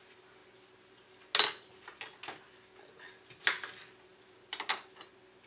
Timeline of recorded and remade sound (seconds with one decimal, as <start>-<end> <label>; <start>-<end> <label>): 0.0-5.5 recorded